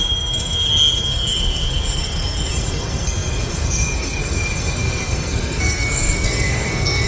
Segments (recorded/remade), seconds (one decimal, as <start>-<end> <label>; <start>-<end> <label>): 0.0-7.1 remade